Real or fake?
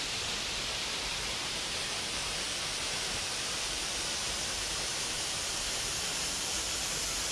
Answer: fake